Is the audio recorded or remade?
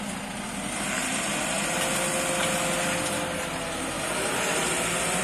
recorded